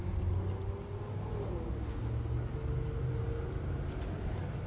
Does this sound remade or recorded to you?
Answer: recorded